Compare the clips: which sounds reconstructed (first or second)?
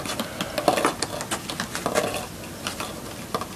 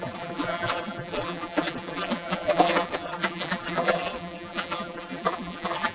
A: second